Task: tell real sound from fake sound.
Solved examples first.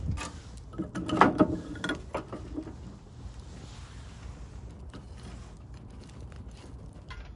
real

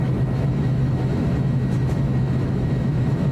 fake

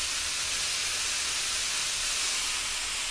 real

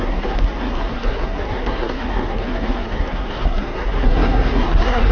fake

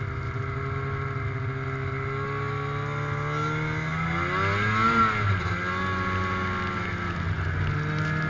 real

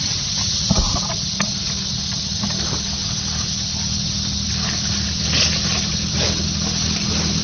real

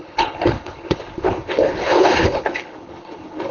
fake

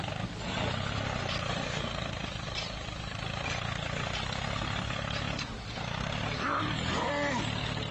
real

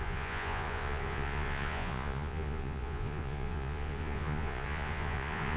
fake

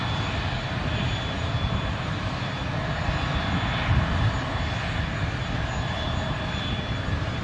real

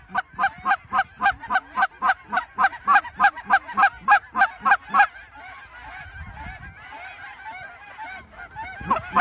real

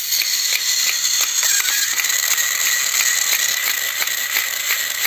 real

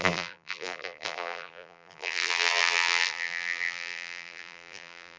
fake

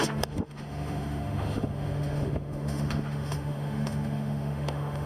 fake